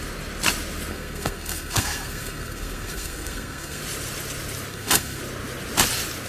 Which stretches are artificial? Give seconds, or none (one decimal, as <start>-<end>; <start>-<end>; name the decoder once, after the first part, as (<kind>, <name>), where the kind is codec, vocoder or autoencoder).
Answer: 0.9-3.8 (codec, SNAC); 4.7-5.2